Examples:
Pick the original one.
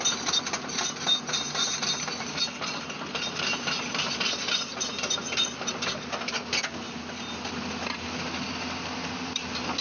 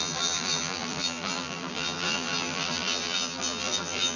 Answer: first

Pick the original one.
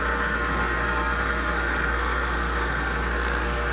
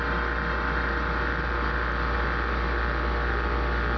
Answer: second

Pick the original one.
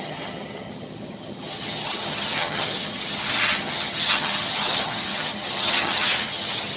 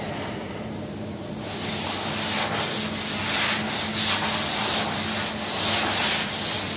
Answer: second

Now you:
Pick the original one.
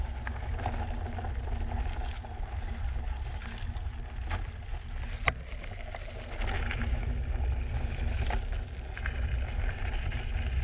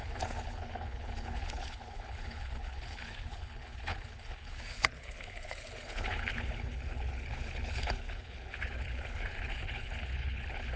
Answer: first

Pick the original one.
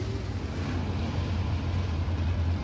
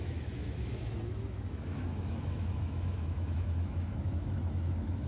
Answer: first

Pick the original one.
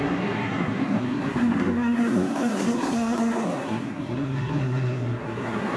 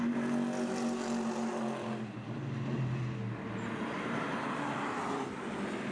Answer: second